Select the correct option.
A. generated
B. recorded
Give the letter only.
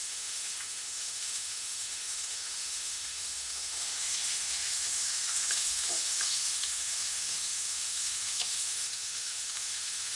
A